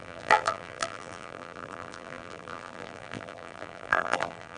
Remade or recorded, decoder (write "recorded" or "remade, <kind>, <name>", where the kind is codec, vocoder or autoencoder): remade, vocoder, BigVGAN v2